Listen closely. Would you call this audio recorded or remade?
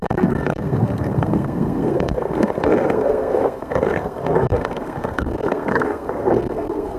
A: remade